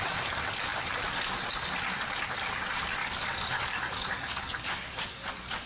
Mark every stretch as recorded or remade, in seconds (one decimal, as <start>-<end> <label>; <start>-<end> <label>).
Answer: 0.0-3.0 recorded; 3.0-5.3 remade; 5.3-5.7 recorded